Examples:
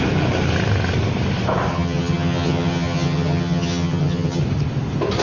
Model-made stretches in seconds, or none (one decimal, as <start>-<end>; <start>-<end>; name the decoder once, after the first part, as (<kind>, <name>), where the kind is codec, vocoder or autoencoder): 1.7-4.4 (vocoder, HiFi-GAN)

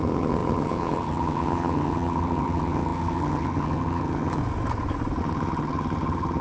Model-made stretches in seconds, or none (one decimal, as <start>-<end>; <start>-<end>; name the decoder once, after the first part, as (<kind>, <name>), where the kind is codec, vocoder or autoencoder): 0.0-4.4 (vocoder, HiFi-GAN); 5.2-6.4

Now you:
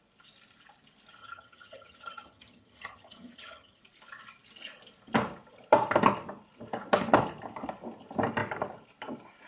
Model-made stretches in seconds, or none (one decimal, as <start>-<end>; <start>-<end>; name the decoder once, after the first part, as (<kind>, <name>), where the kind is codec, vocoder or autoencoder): 1.2-3.8 (vocoder, HiFi-GAN)

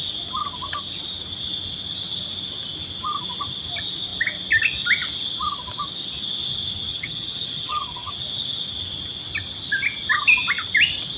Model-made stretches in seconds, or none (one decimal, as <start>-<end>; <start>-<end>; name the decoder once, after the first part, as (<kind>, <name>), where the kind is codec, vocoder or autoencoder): 6.9-8.1 (vocoder, HiFi-GAN)

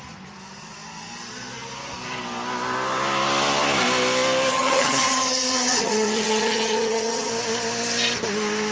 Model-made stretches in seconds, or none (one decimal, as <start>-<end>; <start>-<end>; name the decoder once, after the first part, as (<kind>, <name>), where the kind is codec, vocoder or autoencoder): 4.5-7.3 (vocoder, HiFi-GAN)

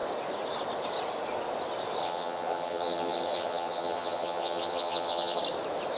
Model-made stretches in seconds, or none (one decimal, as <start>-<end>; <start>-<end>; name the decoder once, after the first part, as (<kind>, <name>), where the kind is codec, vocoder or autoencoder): 2.0-5.4 (vocoder, HiFi-GAN)